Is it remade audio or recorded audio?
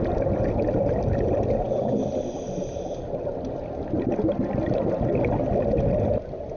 recorded